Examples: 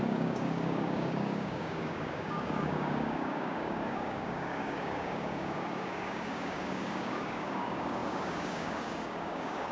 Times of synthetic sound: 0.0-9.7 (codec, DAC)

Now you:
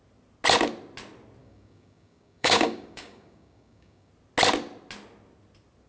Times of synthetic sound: 1.4-4.1 (codec, DAC)

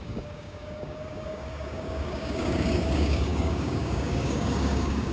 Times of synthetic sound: 0.0-5.1 (codec, DAC)

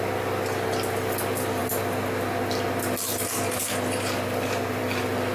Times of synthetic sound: none

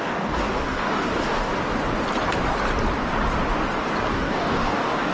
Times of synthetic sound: 0.0-1.5 (codec, DAC); 4.1-5.1

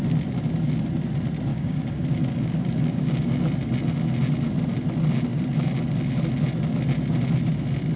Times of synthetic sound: 1.5-3.4 (codec, DAC)

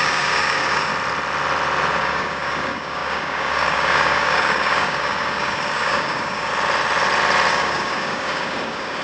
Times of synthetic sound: 0.0-0.9 (codec, DAC); 2.0-6.5; 7.5-9.0